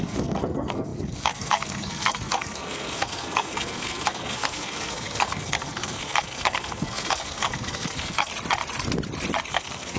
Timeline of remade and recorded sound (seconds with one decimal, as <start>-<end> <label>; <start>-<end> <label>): 0.0-8.3 remade; 8.3-9.5 recorded; 9.5-10.0 remade